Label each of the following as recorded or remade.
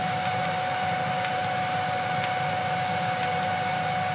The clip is recorded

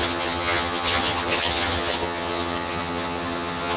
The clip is remade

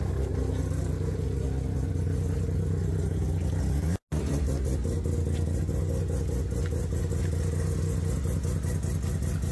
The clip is recorded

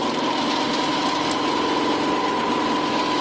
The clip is recorded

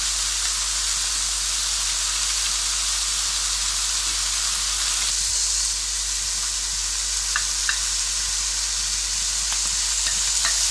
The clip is recorded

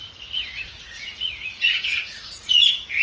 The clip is remade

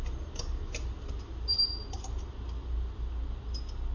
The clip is recorded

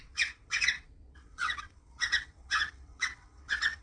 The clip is remade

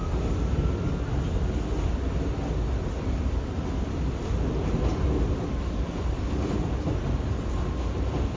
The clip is recorded